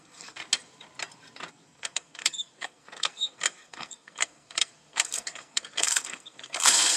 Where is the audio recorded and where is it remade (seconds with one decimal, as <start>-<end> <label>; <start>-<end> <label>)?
0.0-0.4 remade; 0.4-1.5 recorded; 1.5-7.0 remade